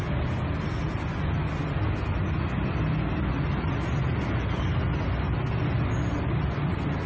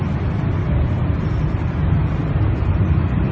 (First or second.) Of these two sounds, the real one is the first